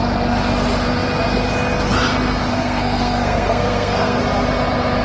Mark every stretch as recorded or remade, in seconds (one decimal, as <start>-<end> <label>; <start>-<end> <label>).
0.0-2.5 recorded; 2.5-4.2 remade; 4.2-5.0 recorded